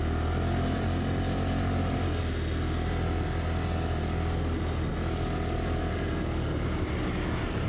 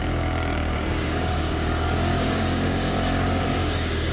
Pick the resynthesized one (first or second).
second